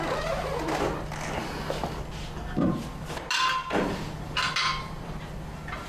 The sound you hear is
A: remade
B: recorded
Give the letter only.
B